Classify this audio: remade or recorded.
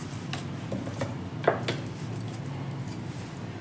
recorded